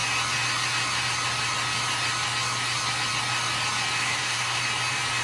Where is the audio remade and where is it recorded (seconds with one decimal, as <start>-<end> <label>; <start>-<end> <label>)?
0.0-4.0 recorded; 4.0-4.6 remade; 4.6-5.2 recorded